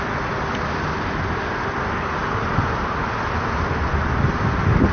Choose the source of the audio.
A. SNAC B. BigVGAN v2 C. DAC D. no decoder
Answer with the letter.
D